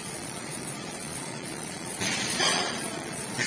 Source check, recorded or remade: remade